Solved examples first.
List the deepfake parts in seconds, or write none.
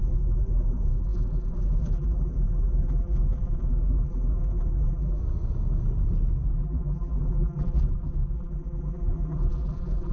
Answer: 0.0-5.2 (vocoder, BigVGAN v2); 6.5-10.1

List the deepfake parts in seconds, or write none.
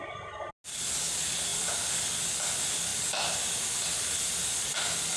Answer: none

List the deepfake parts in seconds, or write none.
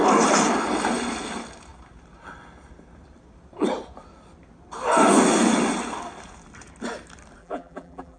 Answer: 7.4-8.2 (vocoder, BigVGAN v2)